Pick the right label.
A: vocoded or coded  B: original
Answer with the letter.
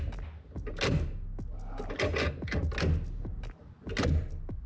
B